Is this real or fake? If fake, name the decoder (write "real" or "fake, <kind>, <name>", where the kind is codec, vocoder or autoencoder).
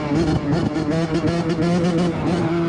real